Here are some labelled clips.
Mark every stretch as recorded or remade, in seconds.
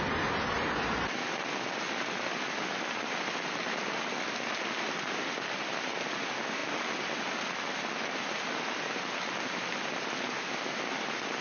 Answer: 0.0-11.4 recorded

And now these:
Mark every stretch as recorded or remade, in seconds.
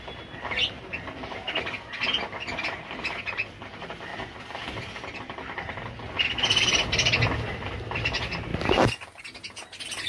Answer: 0.0-10.1 recorded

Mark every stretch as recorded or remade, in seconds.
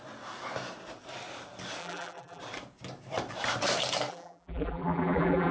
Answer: 0.0-1.8 recorded; 1.8-2.4 remade; 2.4-4.1 recorded; 4.1-5.5 remade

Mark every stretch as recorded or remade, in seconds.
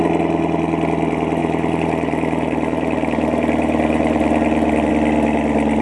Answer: 0.0-1.4 recorded; 1.4-4.9 remade; 4.9-5.8 recorded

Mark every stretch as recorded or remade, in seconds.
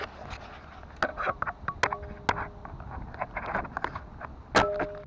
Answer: 0.0-5.1 recorded